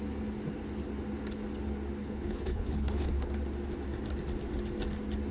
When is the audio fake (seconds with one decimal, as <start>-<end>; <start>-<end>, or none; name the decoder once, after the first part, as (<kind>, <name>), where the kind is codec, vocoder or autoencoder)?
2.0-3.3 (codec, HILCodec)